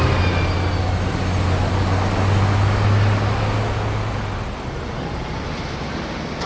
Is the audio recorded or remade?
recorded